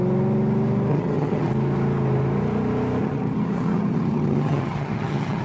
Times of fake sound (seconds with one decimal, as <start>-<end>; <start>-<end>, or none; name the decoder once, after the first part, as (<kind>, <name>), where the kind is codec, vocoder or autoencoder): 0.9-1.5 (vocoder, HiFi-GAN); 3.0-5.4